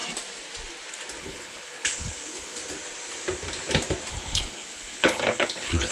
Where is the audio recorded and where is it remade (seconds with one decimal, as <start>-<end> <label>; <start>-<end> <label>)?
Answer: 0.0-1.2 recorded; 1.2-2.6 remade; 2.6-4.1 recorded; 4.1-5.9 remade